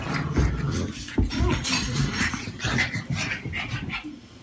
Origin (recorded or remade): recorded